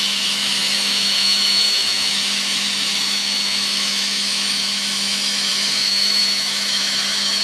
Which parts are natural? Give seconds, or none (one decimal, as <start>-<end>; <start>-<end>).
none